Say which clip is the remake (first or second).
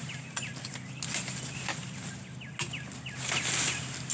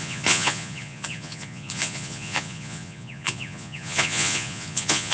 second